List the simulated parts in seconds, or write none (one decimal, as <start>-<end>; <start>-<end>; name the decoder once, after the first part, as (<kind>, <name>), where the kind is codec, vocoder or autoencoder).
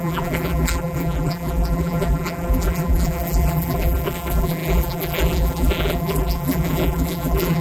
0.0-7.6 (vocoder, BigVGAN v2)